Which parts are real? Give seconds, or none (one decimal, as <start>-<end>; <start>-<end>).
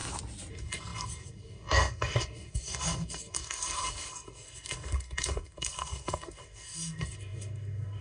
0.0-0.5